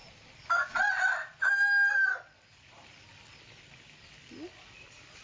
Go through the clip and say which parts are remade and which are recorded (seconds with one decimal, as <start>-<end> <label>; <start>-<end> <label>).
0.0-5.2 recorded